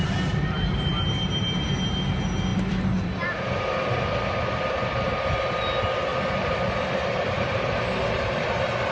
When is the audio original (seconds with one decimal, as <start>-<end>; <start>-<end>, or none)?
0.0-2.5; 3.4-8.9